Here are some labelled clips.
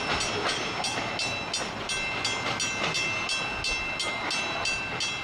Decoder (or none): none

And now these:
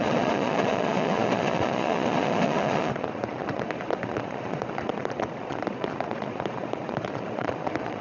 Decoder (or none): vocoder, Vocos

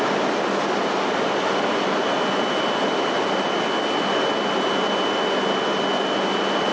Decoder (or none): none